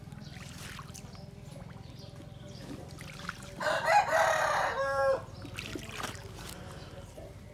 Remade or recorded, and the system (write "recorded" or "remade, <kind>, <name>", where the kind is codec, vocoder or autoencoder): recorded